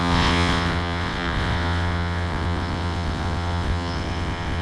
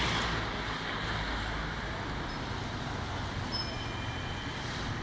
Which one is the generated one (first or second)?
first